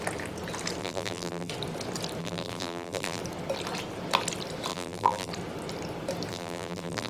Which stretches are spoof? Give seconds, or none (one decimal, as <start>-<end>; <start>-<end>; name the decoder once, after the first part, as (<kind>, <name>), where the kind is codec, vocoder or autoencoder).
0.8-1.5 (vocoder, BigVGAN v2); 2.2-3.2; 4.7-5.3; 6.3-7.1